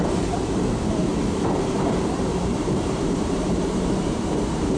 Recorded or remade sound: remade